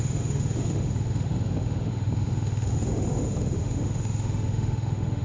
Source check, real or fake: fake